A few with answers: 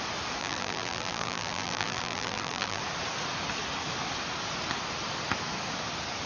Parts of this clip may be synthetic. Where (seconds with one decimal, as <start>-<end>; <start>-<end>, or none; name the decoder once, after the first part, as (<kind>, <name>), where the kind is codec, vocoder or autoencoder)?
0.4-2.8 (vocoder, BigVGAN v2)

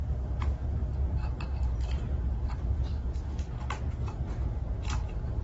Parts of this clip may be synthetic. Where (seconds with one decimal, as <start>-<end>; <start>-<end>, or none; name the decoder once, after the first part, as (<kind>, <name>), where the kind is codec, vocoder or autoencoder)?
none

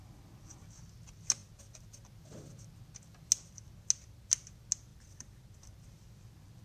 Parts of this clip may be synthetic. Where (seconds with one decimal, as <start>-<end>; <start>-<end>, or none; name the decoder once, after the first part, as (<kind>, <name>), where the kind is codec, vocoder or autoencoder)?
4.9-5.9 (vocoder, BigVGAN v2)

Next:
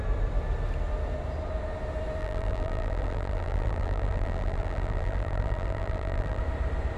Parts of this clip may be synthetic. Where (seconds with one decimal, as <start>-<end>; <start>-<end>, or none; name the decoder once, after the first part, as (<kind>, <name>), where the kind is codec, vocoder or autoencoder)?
2.2-6.4 (vocoder, BigVGAN v2)

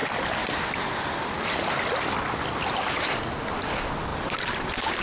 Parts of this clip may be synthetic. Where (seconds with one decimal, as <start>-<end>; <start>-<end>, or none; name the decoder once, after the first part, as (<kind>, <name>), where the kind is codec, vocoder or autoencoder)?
4.1-5.0 (vocoder, BigVGAN v2)